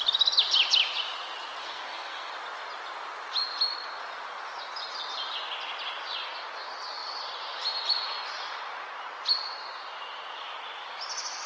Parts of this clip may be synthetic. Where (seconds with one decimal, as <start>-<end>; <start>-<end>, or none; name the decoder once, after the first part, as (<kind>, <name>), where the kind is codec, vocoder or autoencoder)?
1.6-2.3 (codec, SNAC)